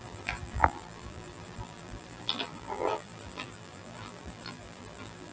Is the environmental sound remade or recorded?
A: remade